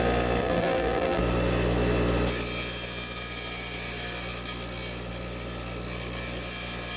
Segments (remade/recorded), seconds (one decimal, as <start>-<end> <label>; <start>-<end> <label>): 0.0-0.4 recorded; 0.4-1.2 remade; 1.2-7.0 recorded